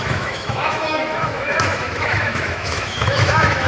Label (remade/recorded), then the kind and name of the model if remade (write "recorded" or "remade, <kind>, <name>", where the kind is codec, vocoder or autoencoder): remade, autoencoder, DAC-VAE